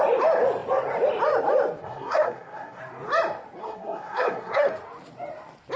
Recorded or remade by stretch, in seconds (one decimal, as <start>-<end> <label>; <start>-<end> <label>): 0.0-1.8 recorded; 1.8-2.8 remade; 2.8-3.6 recorded; 3.6-4.7 remade; 4.7-5.8 recorded